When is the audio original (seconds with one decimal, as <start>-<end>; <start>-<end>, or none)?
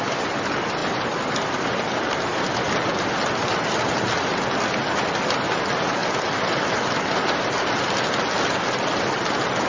0.0-0.8; 1.5-2.3; 3.1-9.7